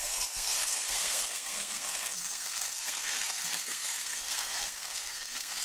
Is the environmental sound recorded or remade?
remade